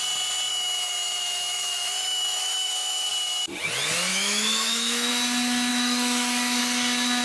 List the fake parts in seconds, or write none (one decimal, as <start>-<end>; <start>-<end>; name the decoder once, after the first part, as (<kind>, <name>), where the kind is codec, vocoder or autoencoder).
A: 0.5-3.1 (autoencoder, DAC-VAE); 4.1-5.1; 5.7-6.6